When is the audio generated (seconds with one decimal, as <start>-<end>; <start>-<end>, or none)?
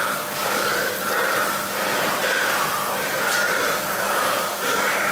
0.0-0.7; 3.8-5.1